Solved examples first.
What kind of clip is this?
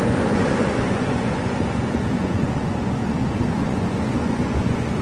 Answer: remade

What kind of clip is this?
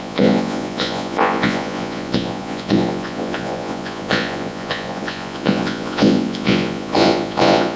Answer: remade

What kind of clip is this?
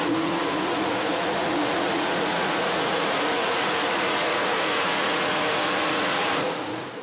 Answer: remade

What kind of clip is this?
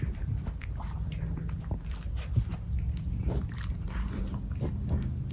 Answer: recorded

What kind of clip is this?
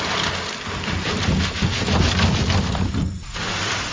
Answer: recorded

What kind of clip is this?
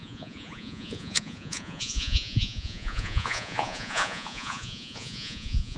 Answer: remade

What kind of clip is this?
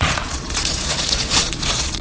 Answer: remade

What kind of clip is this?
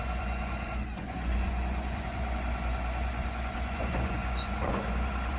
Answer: remade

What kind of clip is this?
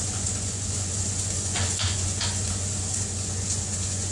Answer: remade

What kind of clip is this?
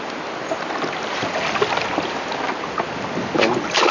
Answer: recorded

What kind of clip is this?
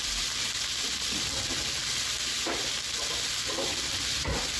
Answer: recorded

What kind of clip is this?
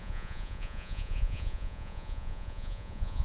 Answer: remade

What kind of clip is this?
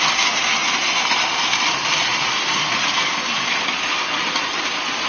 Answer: recorded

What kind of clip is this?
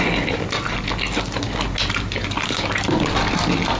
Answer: recorded